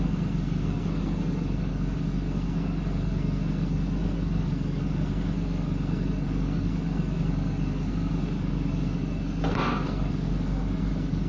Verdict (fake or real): fake